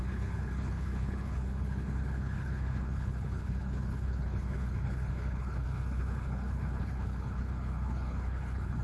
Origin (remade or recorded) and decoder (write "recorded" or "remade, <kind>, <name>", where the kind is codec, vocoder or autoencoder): remade, codec, HILCodec